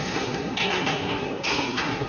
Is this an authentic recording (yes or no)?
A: no